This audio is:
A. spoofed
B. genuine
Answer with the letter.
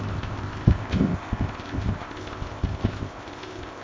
A